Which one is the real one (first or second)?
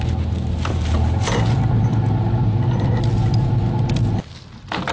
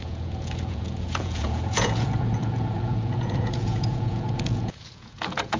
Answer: first